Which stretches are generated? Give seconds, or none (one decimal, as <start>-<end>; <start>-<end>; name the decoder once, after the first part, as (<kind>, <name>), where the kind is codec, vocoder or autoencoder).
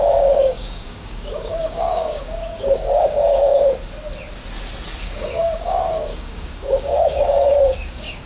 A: 0.0-3.5 (codec, DAC); 5.0-8.3